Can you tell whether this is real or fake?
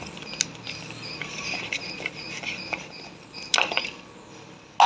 real